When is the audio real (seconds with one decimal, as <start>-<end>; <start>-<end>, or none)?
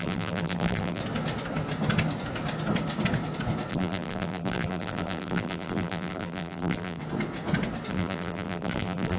1.0-3.7; 7.0-7.9